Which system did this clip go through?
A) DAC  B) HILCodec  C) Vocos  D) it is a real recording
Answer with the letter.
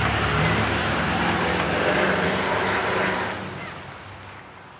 D